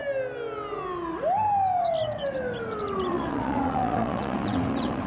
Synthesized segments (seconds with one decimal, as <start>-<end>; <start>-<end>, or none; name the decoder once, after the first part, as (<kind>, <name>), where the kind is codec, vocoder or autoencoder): 3.1-5.1 (vocoder, WaveNeXt)